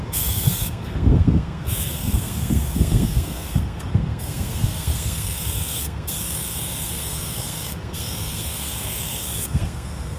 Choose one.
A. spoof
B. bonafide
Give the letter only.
A